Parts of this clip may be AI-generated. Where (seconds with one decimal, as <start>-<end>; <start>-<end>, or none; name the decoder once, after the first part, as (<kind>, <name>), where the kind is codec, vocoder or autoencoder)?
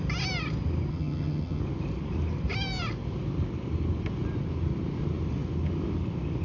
0.9-1.6 (vocoder, HiFi-GAN)